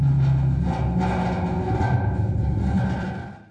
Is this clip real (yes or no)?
yes